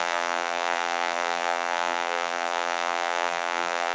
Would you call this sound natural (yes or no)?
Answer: no